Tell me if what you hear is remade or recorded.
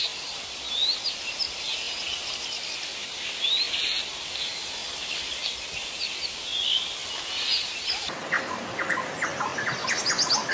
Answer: recorded